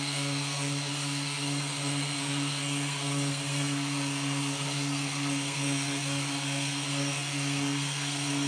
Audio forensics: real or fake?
fake